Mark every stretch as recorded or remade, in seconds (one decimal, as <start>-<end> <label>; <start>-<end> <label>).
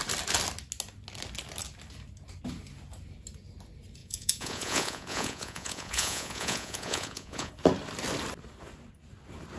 0.0-4.0 recorded; 4.0-7.5 remade; 7.5-9.6 recorded